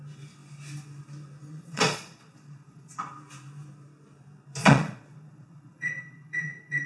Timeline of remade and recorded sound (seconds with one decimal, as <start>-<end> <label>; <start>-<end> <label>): 0.0-1.5 recorded; 1.5-3.1 remade; 3.1-4.6 recorded; 4.6-6.9 remade